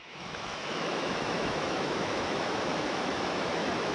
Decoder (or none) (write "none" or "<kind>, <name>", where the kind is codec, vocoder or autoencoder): autoencoder, DAC-VAE